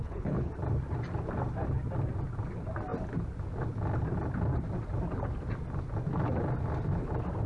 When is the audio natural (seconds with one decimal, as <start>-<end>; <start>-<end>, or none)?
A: 0.5-7.5

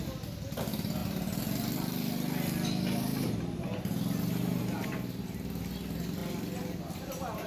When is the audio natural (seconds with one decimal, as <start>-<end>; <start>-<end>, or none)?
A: 0.0-7.5